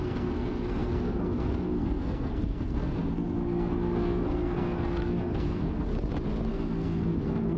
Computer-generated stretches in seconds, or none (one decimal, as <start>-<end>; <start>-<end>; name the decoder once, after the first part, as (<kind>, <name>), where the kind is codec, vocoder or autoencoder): 0.0-5.9 (codec, SNAC); 6.5-7.6